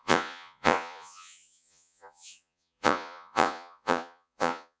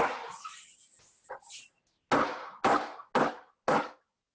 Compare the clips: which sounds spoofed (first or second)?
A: first